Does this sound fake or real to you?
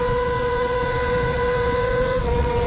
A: fake